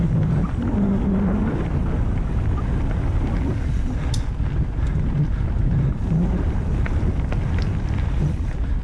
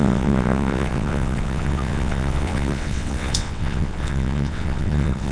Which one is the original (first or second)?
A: first